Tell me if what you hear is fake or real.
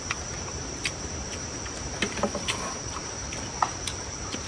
fake